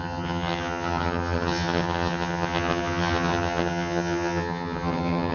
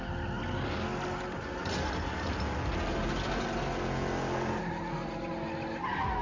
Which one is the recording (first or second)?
second